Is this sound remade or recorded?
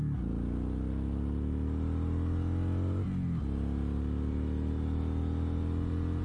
recorded